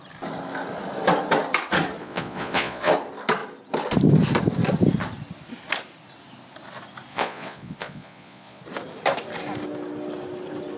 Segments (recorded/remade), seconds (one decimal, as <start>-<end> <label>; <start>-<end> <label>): 0.0-2.0 recorded; 2.0-2.9 remade; 2.9-7.1 recorded; 7.1-8.6 remade; 8.6-10.8 recorded